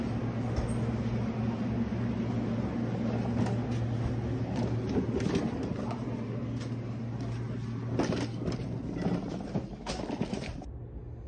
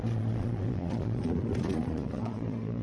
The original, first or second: first